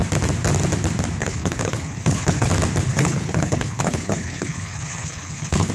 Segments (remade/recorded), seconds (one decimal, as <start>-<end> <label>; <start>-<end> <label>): 0.0-1.2 recorded; 1.2-2.5 remade; 2.5-2.9 recorded; 2.9-5.7 remade